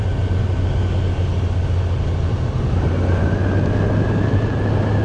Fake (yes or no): no